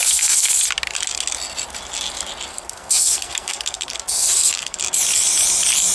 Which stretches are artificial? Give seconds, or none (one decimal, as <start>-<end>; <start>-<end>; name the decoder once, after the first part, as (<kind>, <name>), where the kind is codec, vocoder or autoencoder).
0.0-0.6 (codec, SNAC); 2.5-4.8